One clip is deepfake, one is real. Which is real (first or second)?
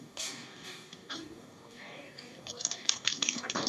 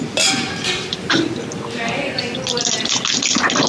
second